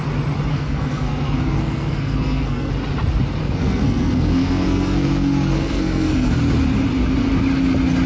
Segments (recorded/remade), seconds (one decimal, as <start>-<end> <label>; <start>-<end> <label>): 0.0-0.5 recorded; 0.5-2.7 remade; 2.7-3.4 recorded; 3.4-6.3 remade; 6.3-8.1 recorded